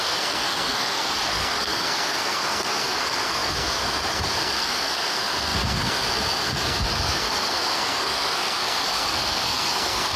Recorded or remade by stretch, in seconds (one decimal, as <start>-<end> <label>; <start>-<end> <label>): 0.0-10.2 remade